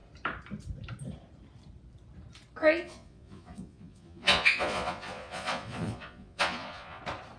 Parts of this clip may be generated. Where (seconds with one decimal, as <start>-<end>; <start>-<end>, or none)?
2.6-7.0